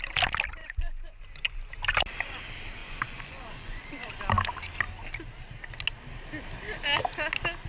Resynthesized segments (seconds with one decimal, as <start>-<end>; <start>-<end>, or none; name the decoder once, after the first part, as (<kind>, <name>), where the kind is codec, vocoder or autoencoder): 0.6-1.2 (vocoder, Vocos); 2.8-4.2